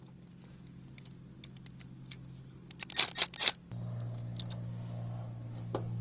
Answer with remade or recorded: recorded